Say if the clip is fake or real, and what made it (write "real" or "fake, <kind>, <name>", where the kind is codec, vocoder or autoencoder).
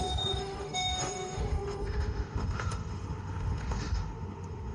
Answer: fake, autoencoder, DAC-VAE